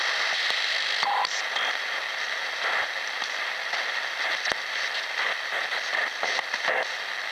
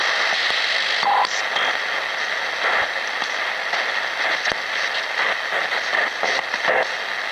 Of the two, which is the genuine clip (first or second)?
second